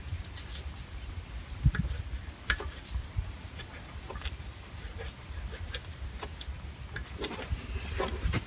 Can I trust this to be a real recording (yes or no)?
yes